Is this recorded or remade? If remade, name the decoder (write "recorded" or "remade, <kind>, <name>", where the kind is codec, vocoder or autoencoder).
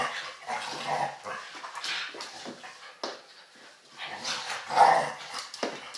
recorded